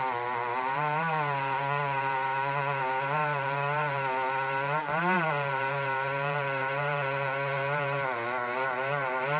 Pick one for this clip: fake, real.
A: fake